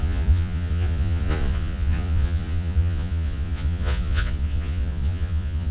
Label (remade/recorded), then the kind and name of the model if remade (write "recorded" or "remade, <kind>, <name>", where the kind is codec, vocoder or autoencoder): remade, vocoder, Vocos